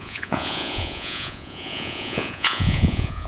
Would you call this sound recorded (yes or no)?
no